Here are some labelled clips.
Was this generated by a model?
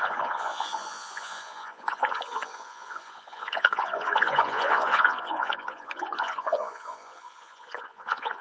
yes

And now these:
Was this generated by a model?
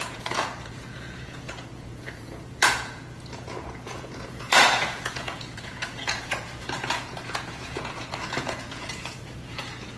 yes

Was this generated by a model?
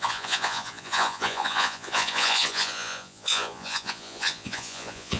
yes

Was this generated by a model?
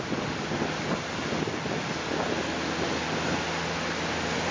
no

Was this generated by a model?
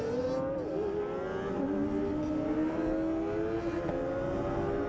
no